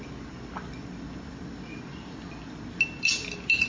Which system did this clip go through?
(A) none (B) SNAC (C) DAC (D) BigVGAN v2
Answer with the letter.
A